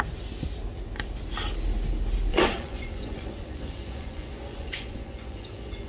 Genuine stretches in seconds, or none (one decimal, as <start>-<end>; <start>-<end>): 0.0-2.3

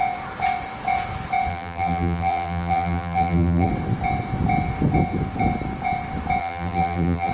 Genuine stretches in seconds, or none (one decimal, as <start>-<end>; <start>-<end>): 0.0-1.5; 3.7-6.4